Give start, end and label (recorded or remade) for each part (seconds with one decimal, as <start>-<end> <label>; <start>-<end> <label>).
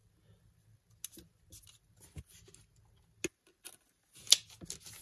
0.0-5.0 recorded